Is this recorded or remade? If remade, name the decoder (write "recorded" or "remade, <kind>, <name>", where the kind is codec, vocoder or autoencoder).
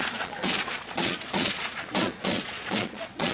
remade, vocoder, Vocos